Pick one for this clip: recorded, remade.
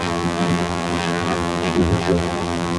remade